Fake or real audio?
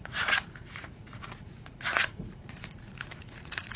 fake